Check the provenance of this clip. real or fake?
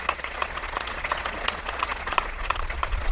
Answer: fake